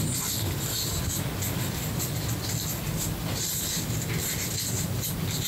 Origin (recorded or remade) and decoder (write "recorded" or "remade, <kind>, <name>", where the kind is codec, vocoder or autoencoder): recorded